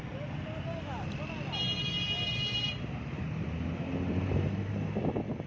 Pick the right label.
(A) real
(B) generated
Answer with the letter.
A